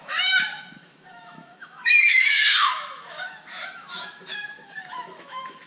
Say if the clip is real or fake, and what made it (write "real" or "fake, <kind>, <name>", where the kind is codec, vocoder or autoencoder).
fake, autoencoder, DAC-VAE